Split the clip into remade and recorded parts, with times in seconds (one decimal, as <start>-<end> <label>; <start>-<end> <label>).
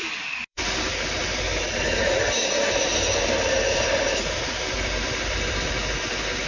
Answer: 0.0-0.9 remade; 0.9-2.9 recorded; 2.9-5.7 remade; 5.7-6.5 recorded